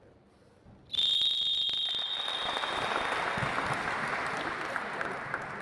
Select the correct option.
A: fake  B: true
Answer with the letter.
B